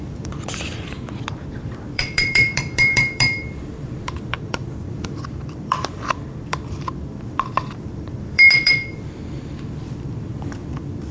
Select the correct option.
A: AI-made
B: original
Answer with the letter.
A